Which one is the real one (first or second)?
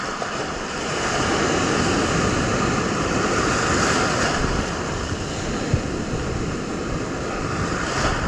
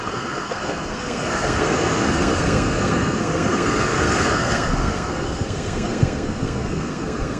first